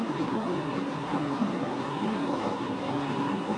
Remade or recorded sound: remade